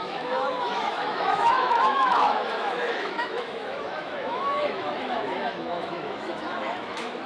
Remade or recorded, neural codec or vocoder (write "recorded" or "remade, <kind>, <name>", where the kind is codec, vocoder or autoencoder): remade, autoencoder, DAC-VAE